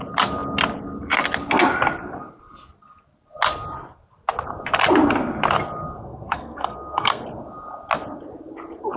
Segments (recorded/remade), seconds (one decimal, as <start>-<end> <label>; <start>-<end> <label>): 0.0-6.0 recorded; 6.0-7.2 remade; 7.2-9.0 recorded